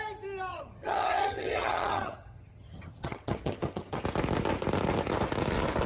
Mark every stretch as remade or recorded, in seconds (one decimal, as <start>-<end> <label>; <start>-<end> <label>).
0.0-0.5 recorded; 0.5-4.0 remade; 4.0-5.9 recorded